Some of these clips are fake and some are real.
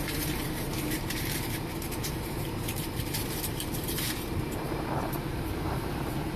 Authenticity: fake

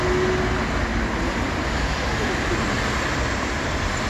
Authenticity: real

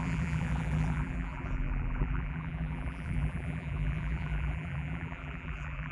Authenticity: fake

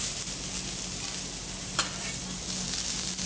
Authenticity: real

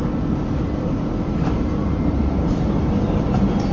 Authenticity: fake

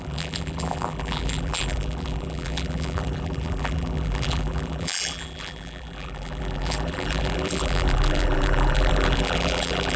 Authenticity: fake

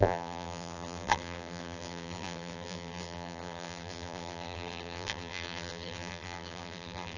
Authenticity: fake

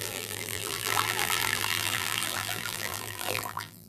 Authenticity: fake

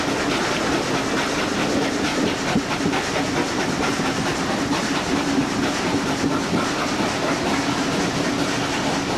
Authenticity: real